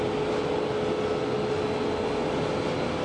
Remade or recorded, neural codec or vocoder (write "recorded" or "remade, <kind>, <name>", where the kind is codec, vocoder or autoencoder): recorded